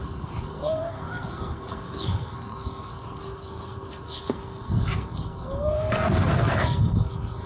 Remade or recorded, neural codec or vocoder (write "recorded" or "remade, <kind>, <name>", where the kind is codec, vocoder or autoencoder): remade, codec, SNAC